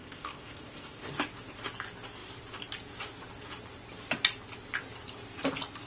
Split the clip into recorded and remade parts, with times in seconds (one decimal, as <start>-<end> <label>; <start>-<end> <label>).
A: 0.0-1.1 remade; 1.1-5.9 recorded